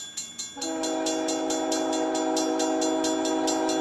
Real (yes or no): yes